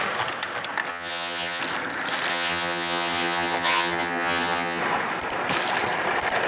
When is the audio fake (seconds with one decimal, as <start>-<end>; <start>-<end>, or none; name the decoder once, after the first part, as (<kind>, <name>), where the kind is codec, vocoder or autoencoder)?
0.9-1.6 (vocoder, HiFi-GAN); 2.3-4.8